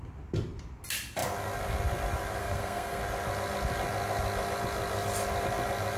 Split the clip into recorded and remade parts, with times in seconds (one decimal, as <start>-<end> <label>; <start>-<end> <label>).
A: 0.0-2.4 recorded; 2.4-3.0 remade; 3.0-6.0 recorded